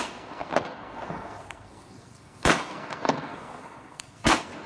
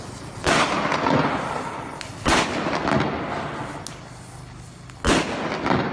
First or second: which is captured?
second